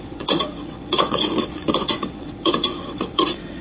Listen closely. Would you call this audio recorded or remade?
remade